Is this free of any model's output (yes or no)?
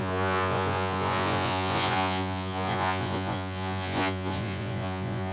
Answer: no